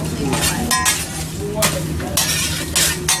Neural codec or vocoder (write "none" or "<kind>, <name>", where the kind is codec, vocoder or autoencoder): none